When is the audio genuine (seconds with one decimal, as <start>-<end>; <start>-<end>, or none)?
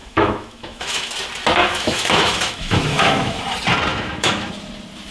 1.1-1.6; 3.4-3.9; 4.5-5.1